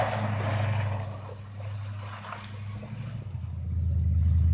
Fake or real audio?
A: real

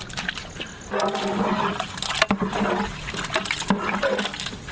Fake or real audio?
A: real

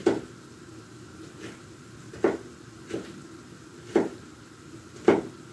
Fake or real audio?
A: real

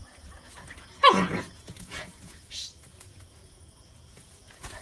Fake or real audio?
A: fake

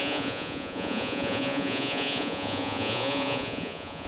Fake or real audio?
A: fake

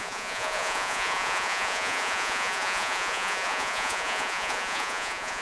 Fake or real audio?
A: fake